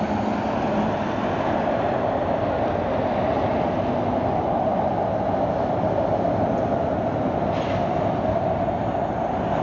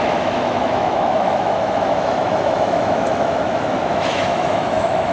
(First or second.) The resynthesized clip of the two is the second